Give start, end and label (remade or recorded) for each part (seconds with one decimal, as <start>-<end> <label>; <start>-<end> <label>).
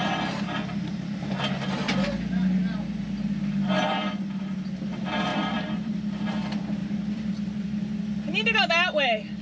0.0-5.3 recorded; 5.3-6.3 remade; 6.3-6.8 recorded; 6.8-7.3 remade; 7.3-9.4 recorded